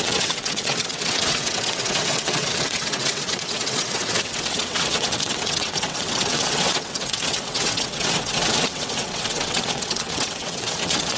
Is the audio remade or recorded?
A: remade